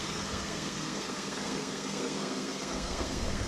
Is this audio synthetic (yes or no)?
yes